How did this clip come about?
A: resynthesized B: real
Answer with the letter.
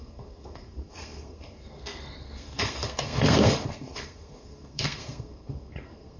A